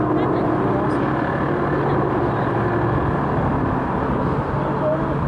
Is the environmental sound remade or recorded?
recorded